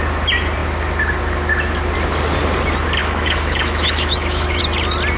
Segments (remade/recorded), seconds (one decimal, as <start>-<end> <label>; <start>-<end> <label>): 0.0-3.0 recorded; 3.0-4.6 remade; 4.6-5.2 recorded